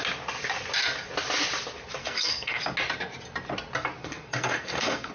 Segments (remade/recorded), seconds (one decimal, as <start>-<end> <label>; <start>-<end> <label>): 0.0-2.0 recorded; 2.0-2.6 remade; 2.6-4.0 recorded; 4.0-5.1 remade